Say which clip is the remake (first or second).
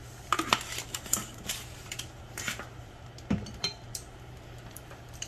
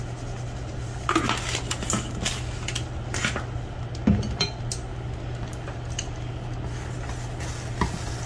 first